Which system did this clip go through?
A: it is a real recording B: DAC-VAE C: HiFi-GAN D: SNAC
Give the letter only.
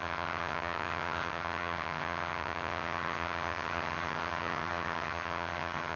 C